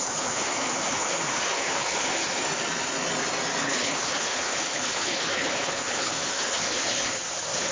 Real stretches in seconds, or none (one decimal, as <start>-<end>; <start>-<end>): 2.4-3.6